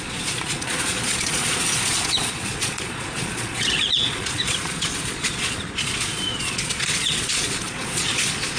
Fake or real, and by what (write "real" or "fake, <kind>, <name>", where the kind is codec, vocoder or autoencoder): fake, vocoder, Vocos